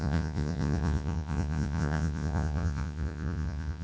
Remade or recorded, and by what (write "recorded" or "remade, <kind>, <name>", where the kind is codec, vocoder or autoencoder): remade, vocoder, Vocos